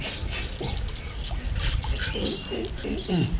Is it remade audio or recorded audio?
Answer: recorded